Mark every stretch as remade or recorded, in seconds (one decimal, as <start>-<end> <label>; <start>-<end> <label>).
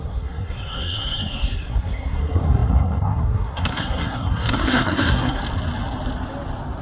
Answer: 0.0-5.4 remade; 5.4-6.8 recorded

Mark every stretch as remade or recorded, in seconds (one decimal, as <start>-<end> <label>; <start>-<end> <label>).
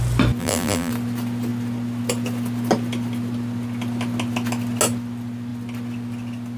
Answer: 0.0-0.4 recorded; 0.4-0.9 remade; 0.9-6.6 recorded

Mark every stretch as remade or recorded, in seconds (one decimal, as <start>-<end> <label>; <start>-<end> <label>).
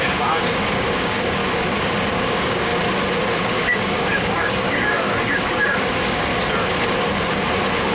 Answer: 0.0-1.4 remade; 1.4-2.1 recorded; 2.1-2.7 remade; 2.7-3.4 recorded; 3.4-6.3 remade; 6.3-7.9 recorded